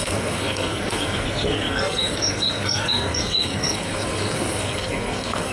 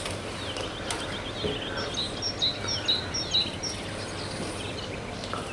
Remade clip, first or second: first